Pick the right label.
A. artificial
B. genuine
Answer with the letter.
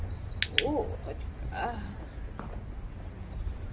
B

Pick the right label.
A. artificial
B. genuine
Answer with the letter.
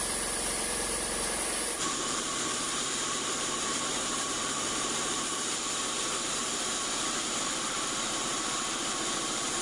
A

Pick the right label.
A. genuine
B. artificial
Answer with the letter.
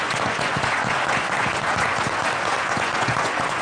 B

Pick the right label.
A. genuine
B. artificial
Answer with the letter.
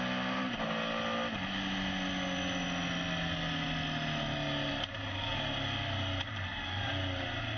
A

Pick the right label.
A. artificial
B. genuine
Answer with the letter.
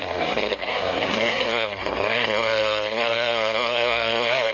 A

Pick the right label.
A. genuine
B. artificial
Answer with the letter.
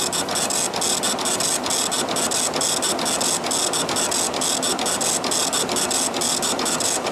A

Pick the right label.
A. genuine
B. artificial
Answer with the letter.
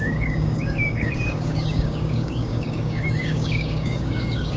B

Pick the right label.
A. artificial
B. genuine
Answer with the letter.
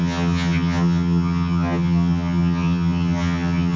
A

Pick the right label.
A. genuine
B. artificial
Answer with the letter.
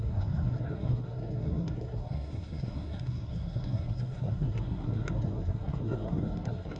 B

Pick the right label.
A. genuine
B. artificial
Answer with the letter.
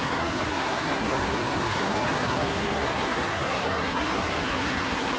B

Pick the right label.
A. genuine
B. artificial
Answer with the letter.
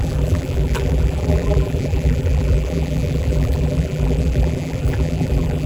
B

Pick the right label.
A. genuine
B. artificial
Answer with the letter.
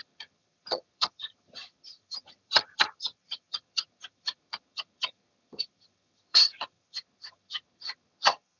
B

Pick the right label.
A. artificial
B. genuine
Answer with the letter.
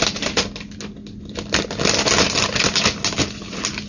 B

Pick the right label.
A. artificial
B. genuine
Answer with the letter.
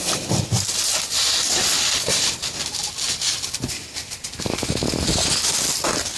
B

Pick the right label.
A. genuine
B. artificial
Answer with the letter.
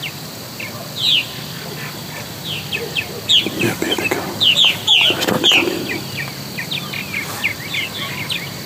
A